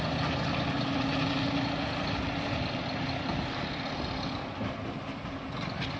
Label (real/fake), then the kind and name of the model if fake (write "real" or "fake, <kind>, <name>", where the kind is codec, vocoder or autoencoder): real